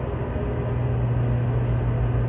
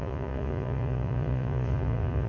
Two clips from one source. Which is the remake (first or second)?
second